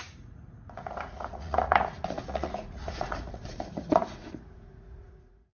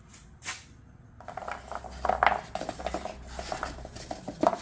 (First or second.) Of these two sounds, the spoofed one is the first